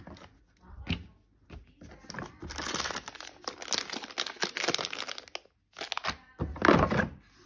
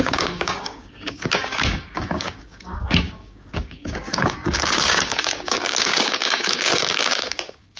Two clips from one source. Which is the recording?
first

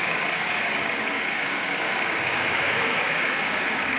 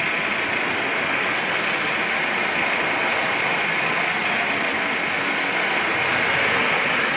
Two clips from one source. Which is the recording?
second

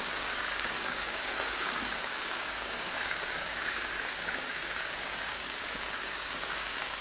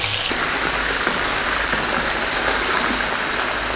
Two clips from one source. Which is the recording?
second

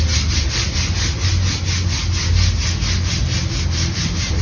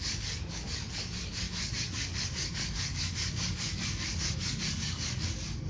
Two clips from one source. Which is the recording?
first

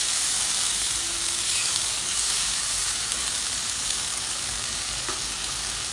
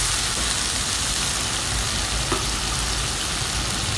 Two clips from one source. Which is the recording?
second